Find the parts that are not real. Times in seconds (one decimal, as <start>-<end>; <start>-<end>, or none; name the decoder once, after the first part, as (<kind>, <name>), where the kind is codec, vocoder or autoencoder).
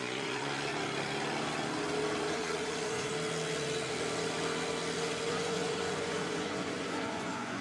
0.0-0.7 (vocoder, Vocos); 2.2-3.1; 5.3-7.6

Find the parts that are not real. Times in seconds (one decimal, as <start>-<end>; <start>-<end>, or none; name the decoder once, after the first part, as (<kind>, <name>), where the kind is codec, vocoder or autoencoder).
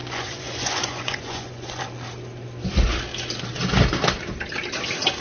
0.0-1.8 (vocoder, Vocos)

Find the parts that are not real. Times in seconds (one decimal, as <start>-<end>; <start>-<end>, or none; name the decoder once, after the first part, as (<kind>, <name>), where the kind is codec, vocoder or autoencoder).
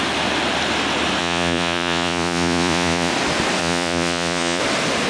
1.2-3.1 (vocoder, Vocos); 3.6-4.6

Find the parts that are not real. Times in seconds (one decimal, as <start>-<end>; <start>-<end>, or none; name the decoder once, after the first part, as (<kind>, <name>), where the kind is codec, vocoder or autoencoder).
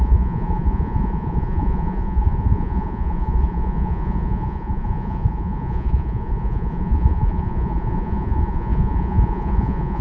0.0-10.0 (vocoder, Vocos)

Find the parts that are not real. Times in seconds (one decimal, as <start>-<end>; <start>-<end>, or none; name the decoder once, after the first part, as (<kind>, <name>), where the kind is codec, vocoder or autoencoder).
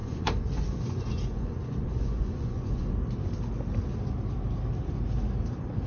0.0-2.9 (vocoder, Vocos)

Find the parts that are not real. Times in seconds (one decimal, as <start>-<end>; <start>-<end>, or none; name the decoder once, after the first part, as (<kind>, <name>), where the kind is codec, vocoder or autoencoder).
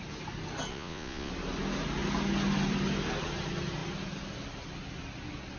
0.7-1.3 (vocoder, Vocos)